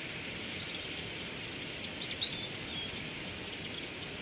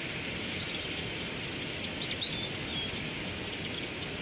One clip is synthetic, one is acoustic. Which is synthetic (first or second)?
first